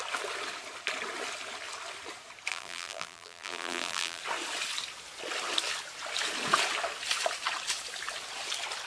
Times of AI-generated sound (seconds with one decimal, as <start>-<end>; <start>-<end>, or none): 2.5-4.2